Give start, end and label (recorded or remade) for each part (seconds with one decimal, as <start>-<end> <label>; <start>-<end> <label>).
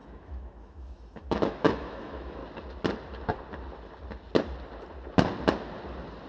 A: 0.0-2.4 remade; 2.4-6.3 recorded